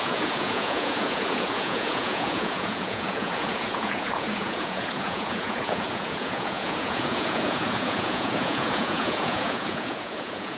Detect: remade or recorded remade